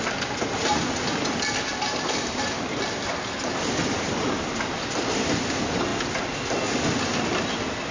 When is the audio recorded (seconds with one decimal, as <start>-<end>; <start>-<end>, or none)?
0.0-7.9